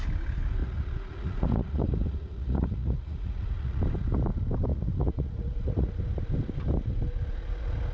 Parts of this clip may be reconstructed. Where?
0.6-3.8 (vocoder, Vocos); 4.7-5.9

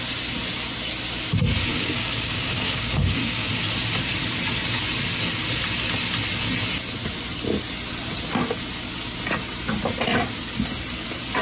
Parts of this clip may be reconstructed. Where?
1.7-3.5 (codec, DAC)